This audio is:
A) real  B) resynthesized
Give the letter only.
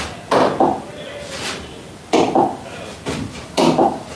A